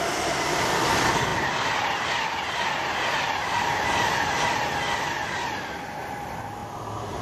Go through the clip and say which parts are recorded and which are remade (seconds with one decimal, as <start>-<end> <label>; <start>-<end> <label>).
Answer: 0.0-7.2 recorded